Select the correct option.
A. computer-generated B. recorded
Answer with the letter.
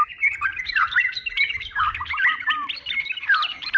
A